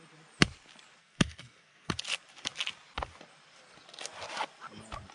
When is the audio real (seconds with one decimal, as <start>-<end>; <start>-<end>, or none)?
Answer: 0.0-1.0; 1.9-5.1